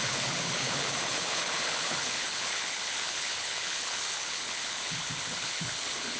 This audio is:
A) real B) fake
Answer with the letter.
B